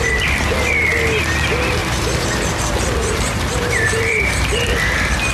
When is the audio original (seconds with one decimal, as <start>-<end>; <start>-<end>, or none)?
0.0-1.8; 2.5-3.0; 4.7-5.3